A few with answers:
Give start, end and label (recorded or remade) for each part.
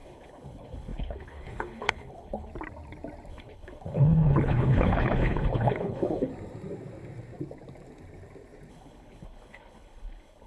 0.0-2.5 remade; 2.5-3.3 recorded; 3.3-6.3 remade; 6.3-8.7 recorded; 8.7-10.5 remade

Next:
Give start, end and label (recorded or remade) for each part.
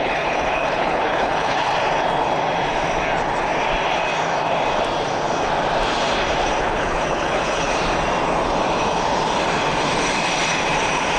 0.0-1.7 remade; 1.7-6.6 recorded; 6.6-7.7 remade; 7.7-11.2 recorded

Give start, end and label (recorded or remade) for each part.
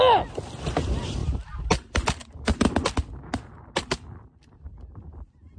0.0-5.6 recorded